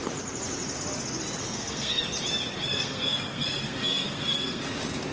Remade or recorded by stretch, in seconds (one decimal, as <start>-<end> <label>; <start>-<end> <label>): 0.0-1.4 recorded; 1.4-2.0 remade; 2.0-2.7 recorded; 2.7-4.6 remade; 4.6-5.1 recorded